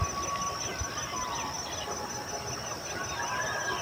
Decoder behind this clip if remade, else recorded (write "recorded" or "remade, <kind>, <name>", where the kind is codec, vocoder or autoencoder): recorded